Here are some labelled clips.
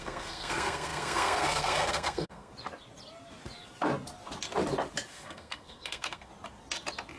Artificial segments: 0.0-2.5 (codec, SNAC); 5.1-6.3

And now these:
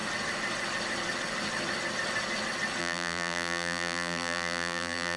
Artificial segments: 2.8-5.2 (vocoder, BigVGAN v2)

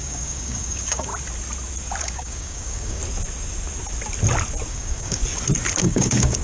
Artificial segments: 0.0-1.1 (codec, DAC); 2.0-3.0; 4.7-5.2; 5.8-6.4

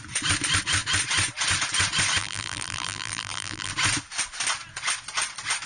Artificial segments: 2.2-3.7 (vocoder, BigVGAN v2)

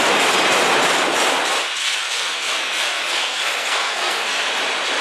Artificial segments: 1.8-4.5 (codec, SNAC)

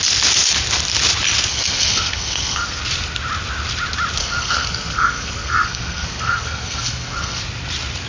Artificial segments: 1.5-2.8 (codec, SNAC); 4.2-7.4